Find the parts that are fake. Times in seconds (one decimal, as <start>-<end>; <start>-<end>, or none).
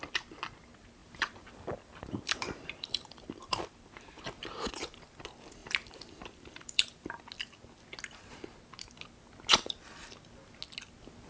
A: 1.0-4.2; 5.6-7.1